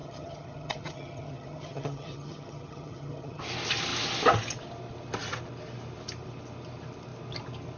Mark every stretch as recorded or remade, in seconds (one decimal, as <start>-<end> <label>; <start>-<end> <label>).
0.0-3.4 remade; 3.4-7.8 recorded